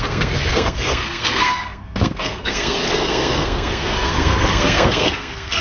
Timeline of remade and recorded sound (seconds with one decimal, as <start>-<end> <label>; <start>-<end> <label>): 0.0-5.6 remade